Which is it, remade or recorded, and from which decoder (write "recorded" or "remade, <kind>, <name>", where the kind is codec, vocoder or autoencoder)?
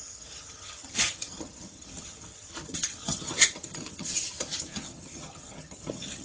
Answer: remade, vocoder, HiFi-GAN